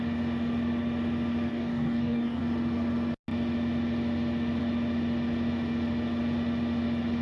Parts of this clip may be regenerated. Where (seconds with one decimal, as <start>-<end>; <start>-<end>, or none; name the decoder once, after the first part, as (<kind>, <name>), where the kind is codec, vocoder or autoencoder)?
1.5-2.4 (codec, DAC)